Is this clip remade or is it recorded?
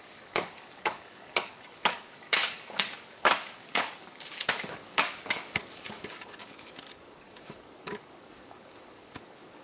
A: remade